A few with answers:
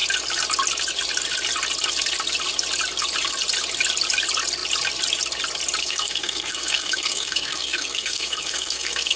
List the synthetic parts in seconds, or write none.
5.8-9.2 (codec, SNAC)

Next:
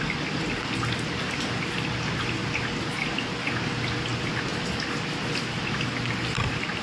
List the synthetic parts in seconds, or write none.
none

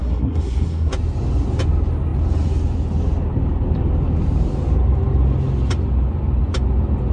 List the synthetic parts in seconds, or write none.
0.0-0.9 (codec, SNAC)

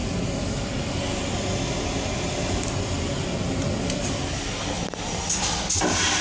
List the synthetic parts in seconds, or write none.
none

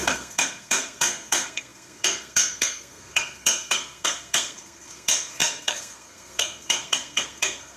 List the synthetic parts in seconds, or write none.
0.0-7.8 (codec, SNAC)

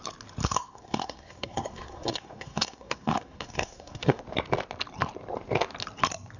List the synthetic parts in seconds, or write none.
0.4-4.2 (codec, SNAC)

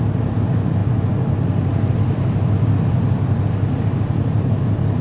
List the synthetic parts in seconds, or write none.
none